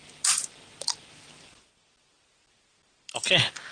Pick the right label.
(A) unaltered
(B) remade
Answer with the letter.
A